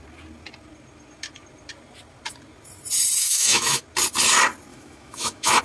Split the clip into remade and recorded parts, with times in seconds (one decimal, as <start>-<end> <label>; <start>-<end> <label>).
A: 0.0-3.2 recorded; 3.2-3.8 remade; 3.8-4.7 recorded; 4.7-5.6 remade